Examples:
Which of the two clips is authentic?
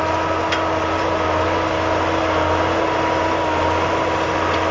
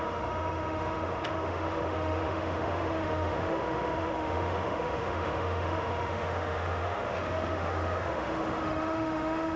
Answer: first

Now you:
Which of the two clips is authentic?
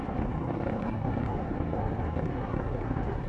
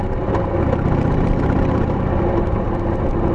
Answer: second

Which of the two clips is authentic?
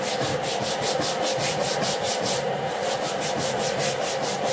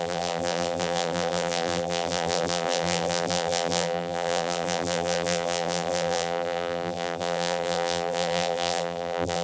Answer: first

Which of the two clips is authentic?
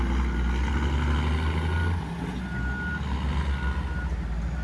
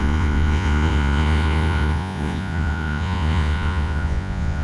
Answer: first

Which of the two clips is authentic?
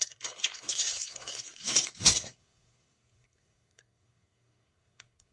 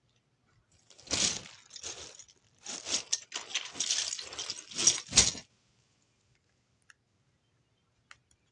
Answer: second